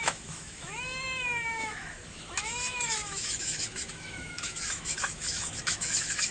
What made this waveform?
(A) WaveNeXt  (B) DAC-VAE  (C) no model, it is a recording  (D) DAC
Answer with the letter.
B